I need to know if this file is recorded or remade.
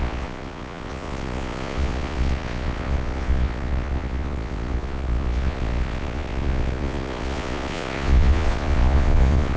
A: remade